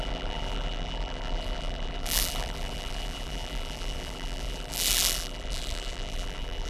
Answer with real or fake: fake